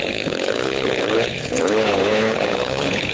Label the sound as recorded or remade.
remade